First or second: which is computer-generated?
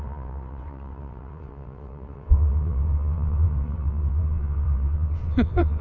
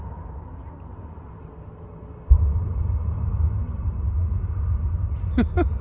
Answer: first